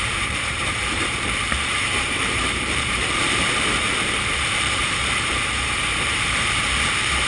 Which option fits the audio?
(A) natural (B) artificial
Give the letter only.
B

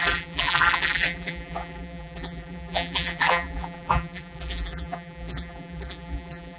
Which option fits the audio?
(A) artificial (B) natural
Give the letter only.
A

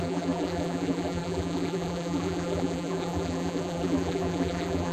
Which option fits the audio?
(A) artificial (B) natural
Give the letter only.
A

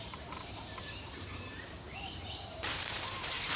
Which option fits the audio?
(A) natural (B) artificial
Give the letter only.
B